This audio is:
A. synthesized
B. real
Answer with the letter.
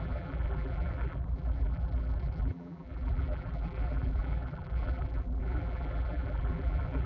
A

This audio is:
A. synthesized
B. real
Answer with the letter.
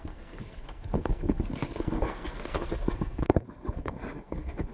A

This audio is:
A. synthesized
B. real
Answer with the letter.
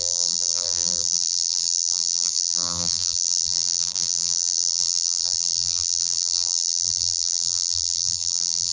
A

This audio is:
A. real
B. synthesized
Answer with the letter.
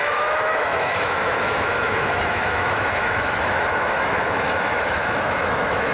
B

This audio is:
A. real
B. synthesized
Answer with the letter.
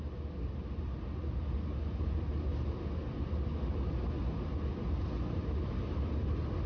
A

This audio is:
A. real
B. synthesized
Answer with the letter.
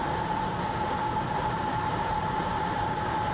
B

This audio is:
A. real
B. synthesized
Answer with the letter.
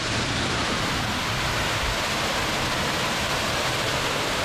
A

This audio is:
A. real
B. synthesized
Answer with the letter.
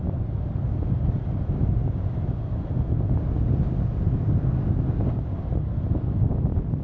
A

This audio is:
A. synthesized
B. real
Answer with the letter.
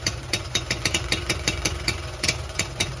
A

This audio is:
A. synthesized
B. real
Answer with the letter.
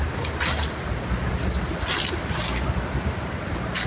B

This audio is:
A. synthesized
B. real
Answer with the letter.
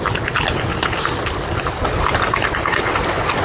B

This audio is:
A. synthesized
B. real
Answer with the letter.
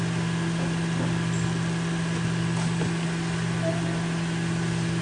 B